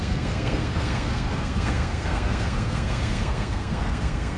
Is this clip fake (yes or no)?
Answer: yes